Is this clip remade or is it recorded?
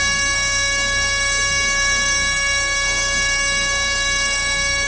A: remade